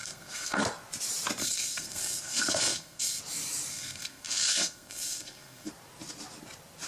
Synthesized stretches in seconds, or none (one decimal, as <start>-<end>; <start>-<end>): 0.0-0.6; 1.4-3.2; 3.7-5.7